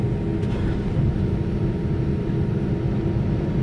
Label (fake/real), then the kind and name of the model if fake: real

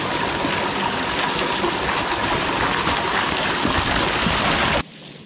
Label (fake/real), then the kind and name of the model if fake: real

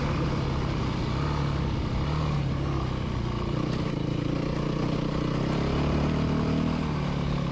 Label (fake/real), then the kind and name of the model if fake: real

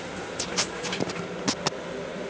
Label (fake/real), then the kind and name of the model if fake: real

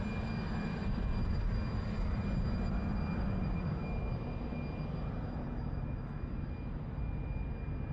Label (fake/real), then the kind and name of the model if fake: real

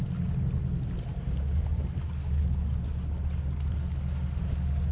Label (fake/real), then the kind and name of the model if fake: real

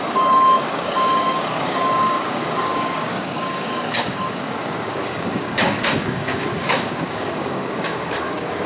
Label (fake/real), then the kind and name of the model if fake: fake, codec, DAC